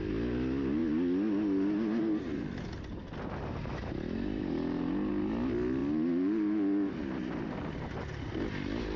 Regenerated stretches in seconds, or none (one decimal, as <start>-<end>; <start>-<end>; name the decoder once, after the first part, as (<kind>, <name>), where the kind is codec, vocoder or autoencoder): none